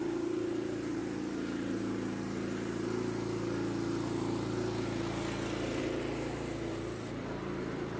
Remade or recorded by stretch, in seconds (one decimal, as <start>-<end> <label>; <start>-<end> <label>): 0.0-1.0 remade; 1.0-5.8 recorded; 5.8-8.0 remade